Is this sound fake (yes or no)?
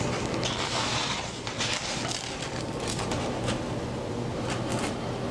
no